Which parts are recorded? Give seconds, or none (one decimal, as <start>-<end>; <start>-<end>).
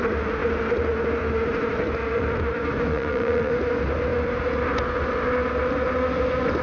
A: 0.0-2.9; 3.5-6.6